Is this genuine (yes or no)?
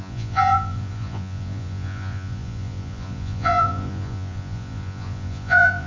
no